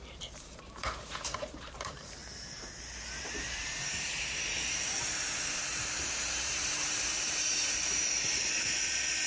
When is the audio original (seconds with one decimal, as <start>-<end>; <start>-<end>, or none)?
2.2-3.2; 5.6-6.1